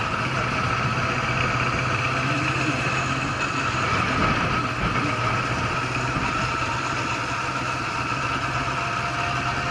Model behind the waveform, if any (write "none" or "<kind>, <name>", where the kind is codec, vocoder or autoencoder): none